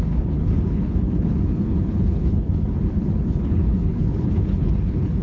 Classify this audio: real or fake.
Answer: fake